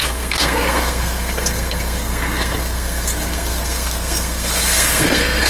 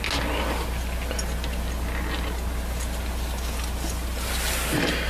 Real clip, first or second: second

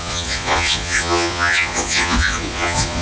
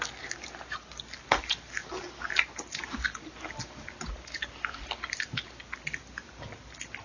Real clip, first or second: second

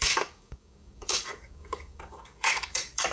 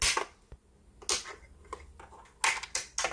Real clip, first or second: second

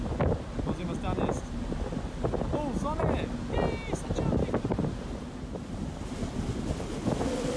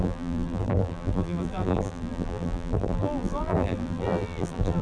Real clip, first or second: first